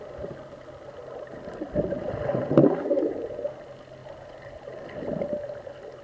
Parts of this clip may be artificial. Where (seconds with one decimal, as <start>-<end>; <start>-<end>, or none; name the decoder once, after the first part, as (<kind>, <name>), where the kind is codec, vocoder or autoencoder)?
2.6-3.1 (codec, DAC)